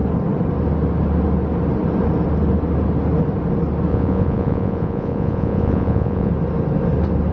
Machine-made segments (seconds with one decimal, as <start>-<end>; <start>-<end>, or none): 3.9-6.3